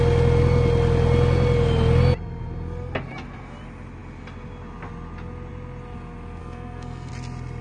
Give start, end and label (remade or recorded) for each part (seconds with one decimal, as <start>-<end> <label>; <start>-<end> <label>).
0.0-6.4 recorded; 6.4-7.1 remade; 7.1-7.6 recorded